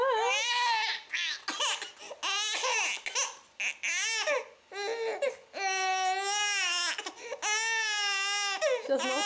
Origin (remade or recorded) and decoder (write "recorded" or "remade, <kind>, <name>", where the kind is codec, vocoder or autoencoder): recorded